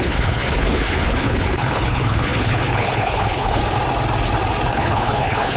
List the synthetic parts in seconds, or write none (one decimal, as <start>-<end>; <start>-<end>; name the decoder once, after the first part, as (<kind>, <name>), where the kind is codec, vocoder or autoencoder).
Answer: 0.0-3.6 (codec, HILCodec); 4.7-5.6